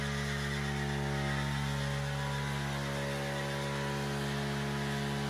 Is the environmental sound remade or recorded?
recorded